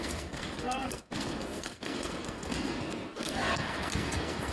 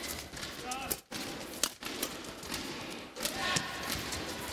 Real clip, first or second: second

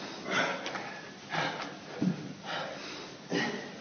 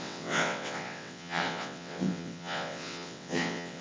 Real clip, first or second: first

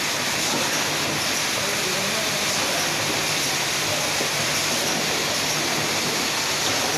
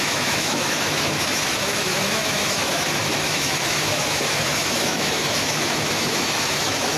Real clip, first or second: first